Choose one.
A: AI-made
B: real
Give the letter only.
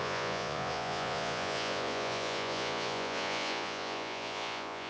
A